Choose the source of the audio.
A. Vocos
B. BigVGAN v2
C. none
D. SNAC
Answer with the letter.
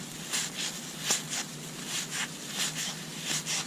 C